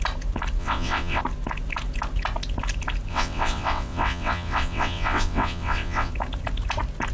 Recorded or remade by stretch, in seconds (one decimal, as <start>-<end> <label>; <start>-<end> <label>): 0.0-0.6 recorded; 0.6-1.2 remade; 1.2-3.1 recorded; 3.1-6.1 remade; 6.1-7.1 recorded

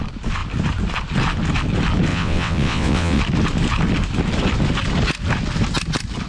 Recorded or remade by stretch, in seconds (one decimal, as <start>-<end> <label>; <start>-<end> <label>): 0.0-2.1 recorded; 2.1-3.2 remade; 3.2-6.3 recorded